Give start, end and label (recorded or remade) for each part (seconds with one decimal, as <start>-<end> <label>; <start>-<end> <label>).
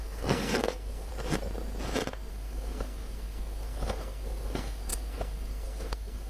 0.0-1.1 remade; 1.1-2.3 recorded; 2.3-6.3 remade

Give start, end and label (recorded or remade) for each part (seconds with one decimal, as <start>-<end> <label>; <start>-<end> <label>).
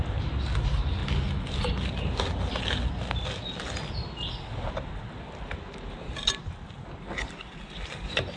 0.0-8.4 recorded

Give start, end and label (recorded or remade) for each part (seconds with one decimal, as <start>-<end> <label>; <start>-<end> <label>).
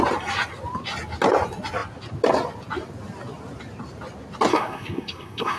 0.0-4.5 recorded; 4.5-5.6 remade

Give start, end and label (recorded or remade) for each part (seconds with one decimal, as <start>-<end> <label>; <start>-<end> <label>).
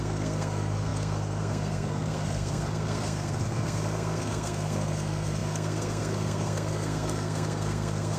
0.0-8.2 remade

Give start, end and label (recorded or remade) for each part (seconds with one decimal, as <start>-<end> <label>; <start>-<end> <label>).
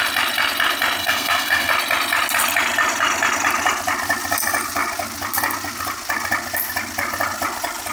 0.0-1.0 recorded; 1.0-1.7 remade; 1.7-7.9 recorded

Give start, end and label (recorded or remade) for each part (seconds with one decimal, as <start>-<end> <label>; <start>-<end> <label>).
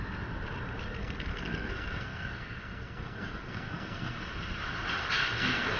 0.0-1.0 recorded; 1.0-4.3 remade; 4.3-5.0 recorded; 5.0-5.8 remade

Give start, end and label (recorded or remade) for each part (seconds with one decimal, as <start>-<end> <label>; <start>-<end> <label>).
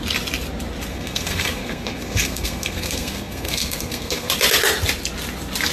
0.0-0.9 recorded; 0.9-4.3 remade; 4.3-5.7 recorded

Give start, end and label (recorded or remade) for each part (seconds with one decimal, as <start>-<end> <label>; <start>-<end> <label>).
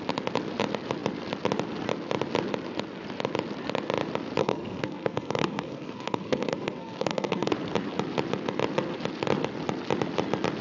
0.0-4.4 recorded; 4.4-7.5 remade; 7.5-10.6 recorded